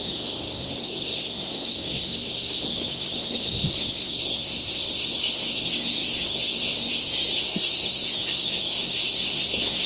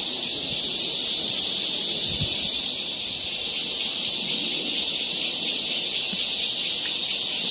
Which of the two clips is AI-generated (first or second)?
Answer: first